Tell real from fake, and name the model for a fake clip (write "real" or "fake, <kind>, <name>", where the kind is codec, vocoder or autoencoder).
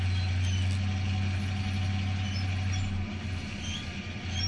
real